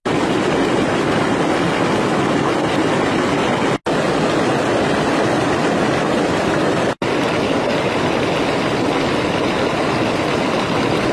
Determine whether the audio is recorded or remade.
recorded